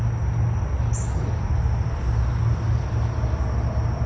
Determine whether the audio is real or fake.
real